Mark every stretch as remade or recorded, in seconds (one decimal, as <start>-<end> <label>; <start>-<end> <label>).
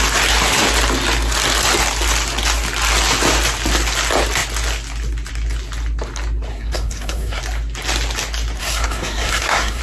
0.0-6.5 recorded; 6.5-7.4 remade; 7.4-8.6 recorded; 8.6-9.8 remade